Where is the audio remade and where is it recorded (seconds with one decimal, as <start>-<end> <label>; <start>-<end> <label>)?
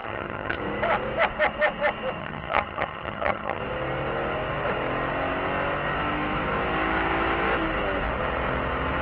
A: 0.0-0.6 remade; 0.6-2.2 recorded; 2.2-3.6 remade; 3.6-9.0 recorded